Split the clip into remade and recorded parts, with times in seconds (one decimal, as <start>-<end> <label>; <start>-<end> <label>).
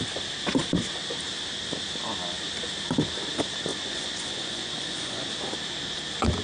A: 0.0-3.7 recorded; 3.7-5.3 remade; 5.3-6.4 recorded